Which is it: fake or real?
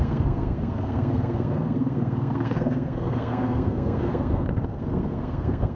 fake